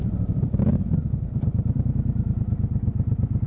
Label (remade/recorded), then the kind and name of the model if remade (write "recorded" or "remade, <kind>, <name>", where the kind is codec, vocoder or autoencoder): remade, vocoder, BigVGAN v2